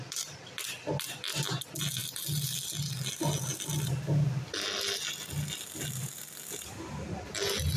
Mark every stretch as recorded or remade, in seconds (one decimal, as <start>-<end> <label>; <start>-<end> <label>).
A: 0.0-7.8 recorded